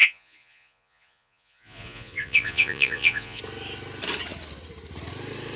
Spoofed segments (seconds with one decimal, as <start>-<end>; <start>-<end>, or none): 0.0-3.4